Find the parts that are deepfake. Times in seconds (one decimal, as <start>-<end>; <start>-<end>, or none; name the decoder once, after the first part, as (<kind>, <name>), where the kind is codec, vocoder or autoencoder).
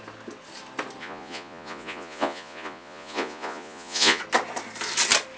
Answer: 1.0-4.2 (vocoder, Vocos)